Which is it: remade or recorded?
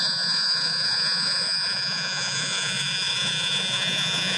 remade